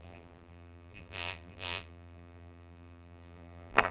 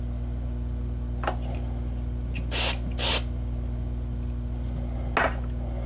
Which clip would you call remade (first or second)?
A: first